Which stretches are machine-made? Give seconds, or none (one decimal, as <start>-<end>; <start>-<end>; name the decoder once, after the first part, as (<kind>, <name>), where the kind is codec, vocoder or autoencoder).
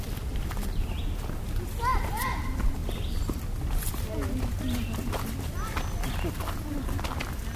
none